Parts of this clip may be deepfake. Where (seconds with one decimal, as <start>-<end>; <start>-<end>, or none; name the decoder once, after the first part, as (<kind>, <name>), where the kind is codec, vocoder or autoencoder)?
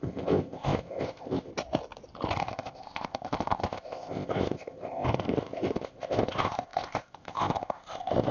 0.0-1.5 (codec, ZipCodec); 2.4-8.3